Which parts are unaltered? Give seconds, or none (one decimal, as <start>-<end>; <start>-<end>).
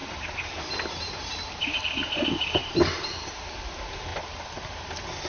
1.8-2.6; 3.4-5.3